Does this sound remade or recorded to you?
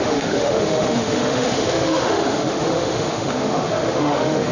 remade